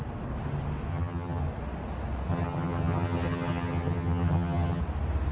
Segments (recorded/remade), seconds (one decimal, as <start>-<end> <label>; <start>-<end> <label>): 0.0-0.9 recorded; 0.9-1.4 remade; 1.4-2.3 recorded; 2.3-4.8 remade; 4.8-5.3 recorded